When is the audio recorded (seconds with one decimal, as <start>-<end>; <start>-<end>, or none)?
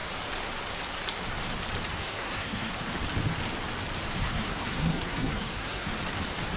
0.0-2.0; 2.7-4.2; 5.9-6.6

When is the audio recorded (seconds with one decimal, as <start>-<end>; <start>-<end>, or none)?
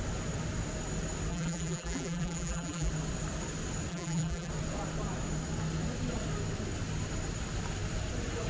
0.0-1.3; 2.9-3.9; 4.5-8.5